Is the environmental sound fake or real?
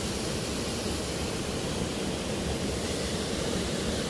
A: real